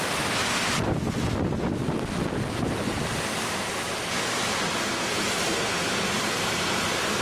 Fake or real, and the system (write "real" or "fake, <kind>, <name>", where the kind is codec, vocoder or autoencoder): real